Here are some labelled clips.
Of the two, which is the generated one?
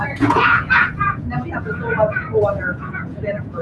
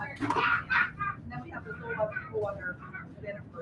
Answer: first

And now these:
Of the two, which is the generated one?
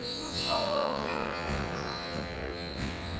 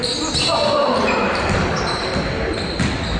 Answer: first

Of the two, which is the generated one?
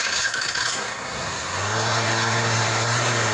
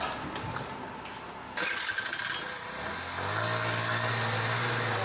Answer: first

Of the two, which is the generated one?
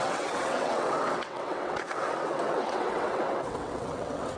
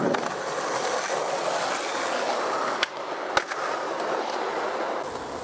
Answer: first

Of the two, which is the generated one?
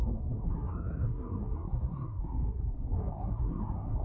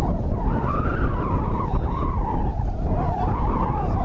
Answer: first